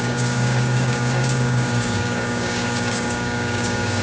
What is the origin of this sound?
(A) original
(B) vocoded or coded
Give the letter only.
B